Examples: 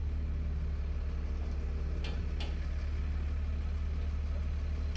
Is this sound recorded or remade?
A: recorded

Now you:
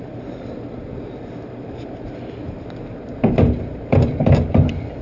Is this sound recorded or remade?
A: remade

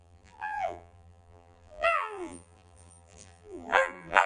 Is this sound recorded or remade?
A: remade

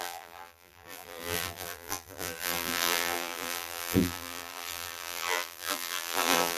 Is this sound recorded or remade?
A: remade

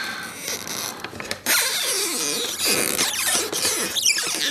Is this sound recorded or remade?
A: remade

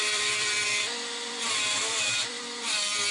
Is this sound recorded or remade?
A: remade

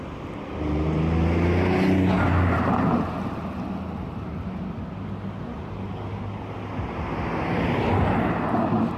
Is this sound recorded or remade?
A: recorded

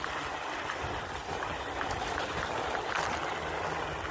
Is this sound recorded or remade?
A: recorded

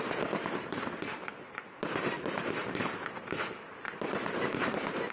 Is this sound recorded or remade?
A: remade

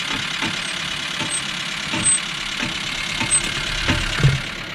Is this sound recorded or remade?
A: recorded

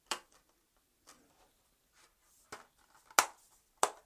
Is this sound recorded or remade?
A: recorded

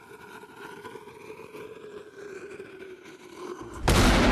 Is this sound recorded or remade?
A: recorded